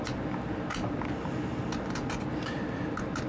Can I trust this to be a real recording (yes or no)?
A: yes